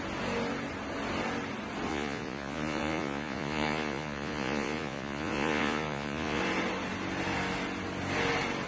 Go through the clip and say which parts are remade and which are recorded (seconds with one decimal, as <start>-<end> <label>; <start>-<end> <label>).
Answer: 0.0-1.9 recorded; 1.9-6.4 remade; 6.4-8.7 recorded